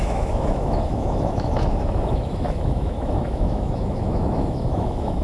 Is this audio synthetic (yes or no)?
yes